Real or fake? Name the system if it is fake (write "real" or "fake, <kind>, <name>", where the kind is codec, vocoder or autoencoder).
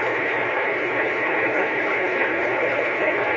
fake, codec, HILCodec